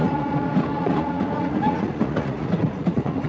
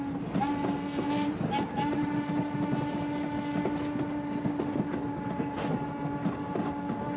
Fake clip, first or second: first